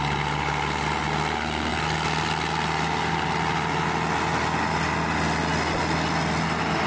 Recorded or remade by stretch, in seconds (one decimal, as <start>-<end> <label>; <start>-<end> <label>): 0.0-6.9 recorded